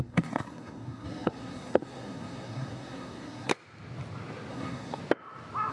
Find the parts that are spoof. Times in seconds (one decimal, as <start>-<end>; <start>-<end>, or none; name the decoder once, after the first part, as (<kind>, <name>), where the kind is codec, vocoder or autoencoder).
0.0-3.5 (codec, SNAC); 4.5-5.0